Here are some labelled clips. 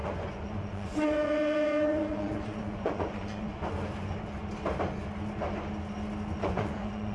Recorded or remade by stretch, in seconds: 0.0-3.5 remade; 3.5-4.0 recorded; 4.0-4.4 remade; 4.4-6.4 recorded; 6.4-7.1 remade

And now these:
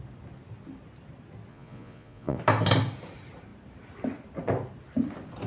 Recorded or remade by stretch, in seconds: 0.0-1.5 recorded; 1.5-2.4 remade; 2.4-5.5 recorded